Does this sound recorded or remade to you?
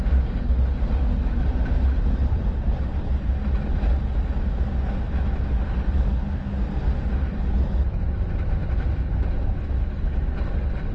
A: recorded